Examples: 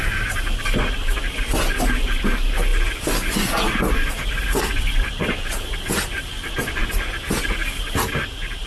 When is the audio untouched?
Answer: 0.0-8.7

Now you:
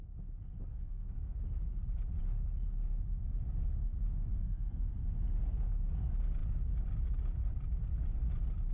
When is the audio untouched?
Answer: 0.0-0.7; 1.4-4.3; 4.9-8.7

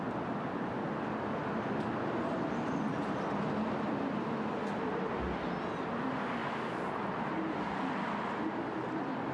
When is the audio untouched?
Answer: 0.0-9.3

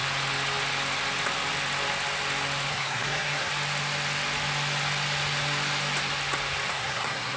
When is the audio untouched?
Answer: 0.0-2.7; 3.5-6.7